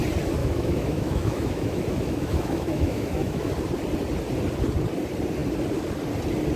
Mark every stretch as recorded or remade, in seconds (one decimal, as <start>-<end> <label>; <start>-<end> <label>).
0.0-0.4 recorded; 0.4-3.5 remade; 3.5-6.6 recorded